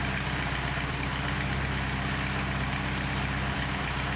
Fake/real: real